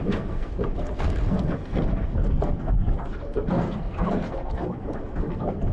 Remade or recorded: remade